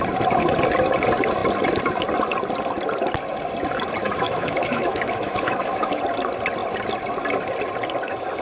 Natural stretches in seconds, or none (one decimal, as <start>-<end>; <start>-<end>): 0.0-4.0; 6.0-8.4